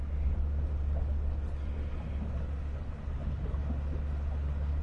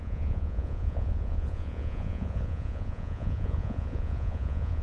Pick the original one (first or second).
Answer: first